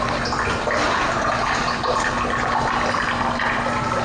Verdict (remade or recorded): recorded